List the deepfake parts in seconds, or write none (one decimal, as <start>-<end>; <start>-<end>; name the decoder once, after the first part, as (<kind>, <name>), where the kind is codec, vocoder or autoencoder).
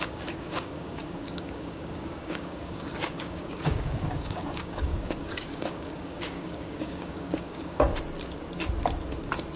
0.0-7.9 (codec, DAC)